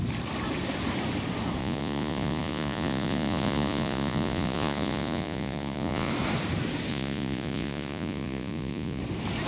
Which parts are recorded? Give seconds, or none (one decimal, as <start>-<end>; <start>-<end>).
0.0-1.6; 6.1-6.9; 9.0-9.5

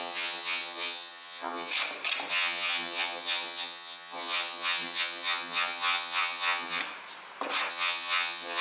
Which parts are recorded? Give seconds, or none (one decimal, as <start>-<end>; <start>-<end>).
1.7-2.3; 6.8-7.7

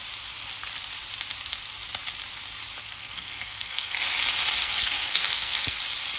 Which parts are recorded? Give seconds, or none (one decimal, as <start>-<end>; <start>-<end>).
0.0-2.8; 4.1-4.6; 5.8-6.2

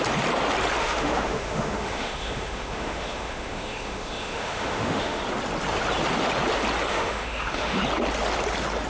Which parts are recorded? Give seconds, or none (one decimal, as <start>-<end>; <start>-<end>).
0.0-0.8; 5.2-6.9; 7.8-8.9